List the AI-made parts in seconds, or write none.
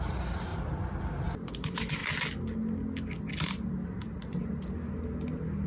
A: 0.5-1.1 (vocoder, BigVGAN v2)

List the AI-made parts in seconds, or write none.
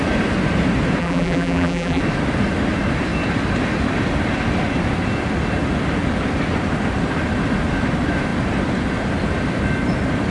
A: 1.0-2.0 (vocoder, BigVGAN v2)